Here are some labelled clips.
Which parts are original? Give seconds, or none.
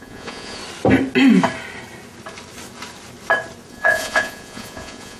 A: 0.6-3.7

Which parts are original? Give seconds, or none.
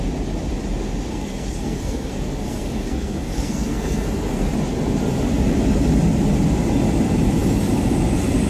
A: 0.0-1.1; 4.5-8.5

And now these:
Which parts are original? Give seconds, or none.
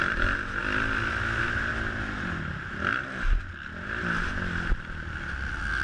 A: 0.0-5.8